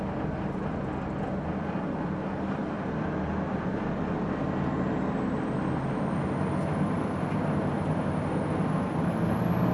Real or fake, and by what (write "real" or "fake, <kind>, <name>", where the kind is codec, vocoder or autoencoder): real